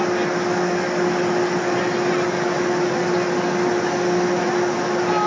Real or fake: real